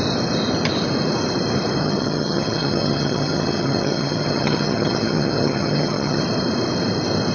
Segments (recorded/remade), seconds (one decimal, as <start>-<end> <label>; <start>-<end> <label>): 0.0-1.8 recorded; 1.8-6.2 remade; 6.2-7.3 recorded